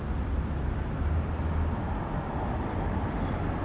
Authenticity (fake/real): real